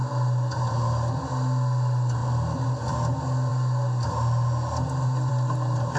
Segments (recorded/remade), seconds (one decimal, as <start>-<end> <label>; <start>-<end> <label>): 0.0-6.0 recorded